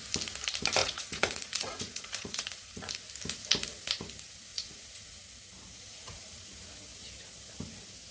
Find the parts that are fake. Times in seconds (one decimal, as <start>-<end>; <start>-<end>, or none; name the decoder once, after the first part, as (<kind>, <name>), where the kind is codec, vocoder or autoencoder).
0.8-2.9 (vocoder, Vocos); 4.5-5.2; 5.9-6.6

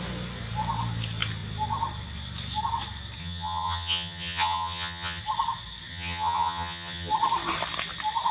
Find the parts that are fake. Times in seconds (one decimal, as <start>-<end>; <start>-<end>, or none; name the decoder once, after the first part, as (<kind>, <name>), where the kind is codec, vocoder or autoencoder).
3.2-5.2 (vocoder, HiFi-GAN); 5.9-7.1

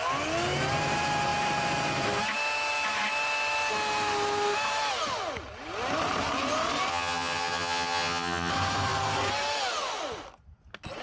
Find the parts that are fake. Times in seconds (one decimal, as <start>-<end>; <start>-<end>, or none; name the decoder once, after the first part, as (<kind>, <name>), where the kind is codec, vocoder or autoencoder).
6.9-8.5 (vocoder, HiFi-GAN)

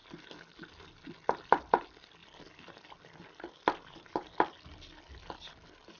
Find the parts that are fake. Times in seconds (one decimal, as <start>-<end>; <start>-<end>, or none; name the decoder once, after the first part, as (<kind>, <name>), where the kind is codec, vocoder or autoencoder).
none